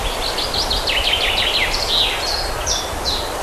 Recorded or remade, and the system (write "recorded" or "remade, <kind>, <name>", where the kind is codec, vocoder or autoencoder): recorded